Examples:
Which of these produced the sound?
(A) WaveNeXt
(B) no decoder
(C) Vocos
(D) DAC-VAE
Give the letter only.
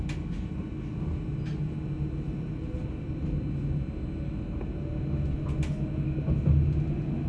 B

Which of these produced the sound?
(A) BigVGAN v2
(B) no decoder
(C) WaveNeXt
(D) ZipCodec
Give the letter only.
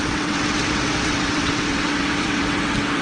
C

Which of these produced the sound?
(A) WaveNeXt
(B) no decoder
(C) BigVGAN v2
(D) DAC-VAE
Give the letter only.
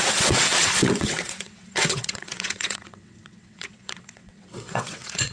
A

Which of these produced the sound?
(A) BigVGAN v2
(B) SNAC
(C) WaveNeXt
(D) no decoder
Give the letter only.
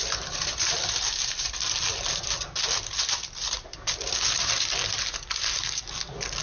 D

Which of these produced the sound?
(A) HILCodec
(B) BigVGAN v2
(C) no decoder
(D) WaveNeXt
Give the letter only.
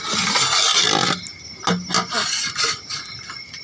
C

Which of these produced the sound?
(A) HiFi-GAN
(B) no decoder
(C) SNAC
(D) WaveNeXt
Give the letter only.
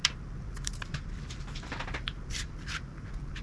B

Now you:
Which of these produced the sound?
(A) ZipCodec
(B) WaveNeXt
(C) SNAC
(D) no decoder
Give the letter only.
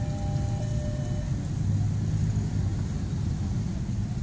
D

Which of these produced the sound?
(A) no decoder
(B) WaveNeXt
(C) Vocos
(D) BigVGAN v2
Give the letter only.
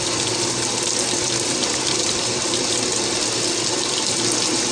A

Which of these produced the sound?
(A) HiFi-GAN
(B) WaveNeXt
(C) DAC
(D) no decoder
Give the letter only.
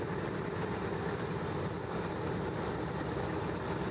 D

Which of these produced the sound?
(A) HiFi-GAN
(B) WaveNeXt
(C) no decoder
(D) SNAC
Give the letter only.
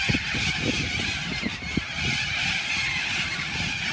C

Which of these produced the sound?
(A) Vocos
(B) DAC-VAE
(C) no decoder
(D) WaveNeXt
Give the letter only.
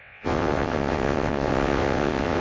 D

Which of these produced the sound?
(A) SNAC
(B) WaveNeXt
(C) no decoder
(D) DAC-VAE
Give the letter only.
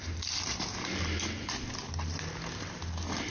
C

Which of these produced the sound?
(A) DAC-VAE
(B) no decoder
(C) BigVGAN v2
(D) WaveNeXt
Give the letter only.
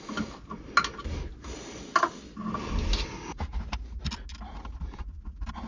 B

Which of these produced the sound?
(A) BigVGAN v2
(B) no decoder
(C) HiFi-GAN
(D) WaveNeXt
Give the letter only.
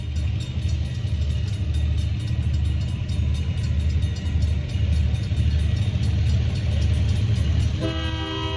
B